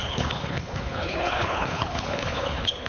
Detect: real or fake fake